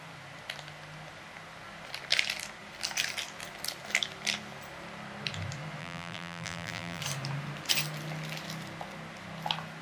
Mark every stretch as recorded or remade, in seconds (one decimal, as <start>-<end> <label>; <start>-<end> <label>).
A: 0.0-5.8 recorded; 5.8-7.0 remade; 7.0-9.8 recorded